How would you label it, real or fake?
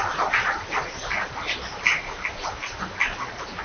real